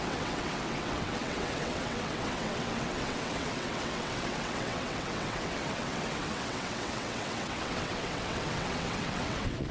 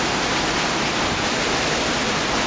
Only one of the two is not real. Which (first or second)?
first